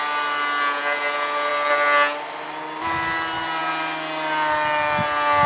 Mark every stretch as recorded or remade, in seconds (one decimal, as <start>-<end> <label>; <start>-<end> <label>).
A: 0.0-5.5 recorded